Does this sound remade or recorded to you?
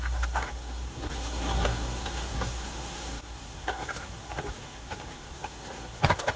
remade